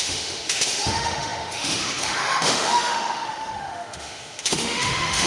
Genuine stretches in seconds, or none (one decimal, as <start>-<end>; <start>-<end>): none